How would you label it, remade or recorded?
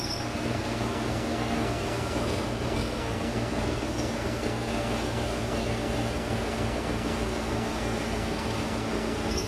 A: remade